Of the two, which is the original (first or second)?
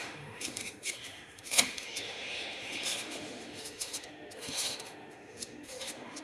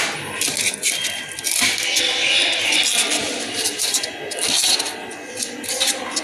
second